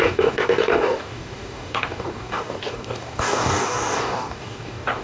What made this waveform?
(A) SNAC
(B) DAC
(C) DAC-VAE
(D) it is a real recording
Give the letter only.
B